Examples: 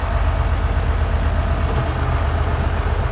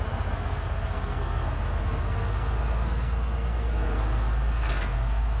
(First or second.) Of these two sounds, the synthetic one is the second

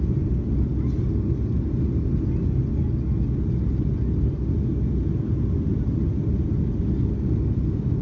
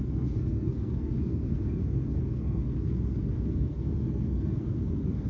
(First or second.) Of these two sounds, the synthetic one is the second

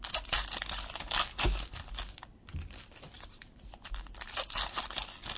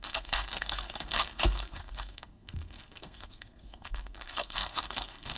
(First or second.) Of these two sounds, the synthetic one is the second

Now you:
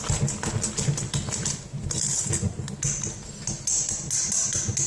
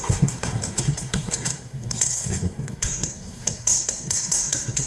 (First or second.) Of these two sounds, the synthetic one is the second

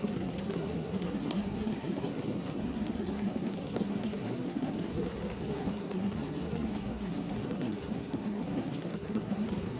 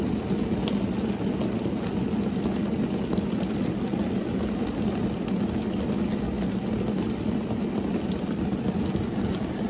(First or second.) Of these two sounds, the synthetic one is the first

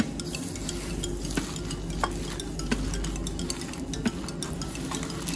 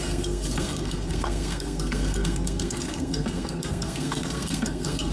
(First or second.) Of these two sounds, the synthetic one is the second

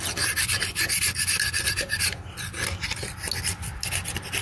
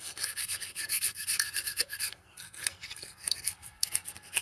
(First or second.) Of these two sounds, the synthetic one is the second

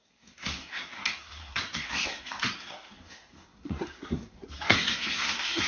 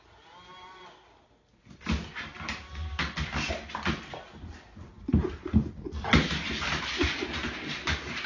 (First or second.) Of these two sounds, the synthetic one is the first